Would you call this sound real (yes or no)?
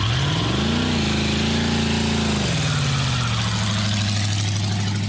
yes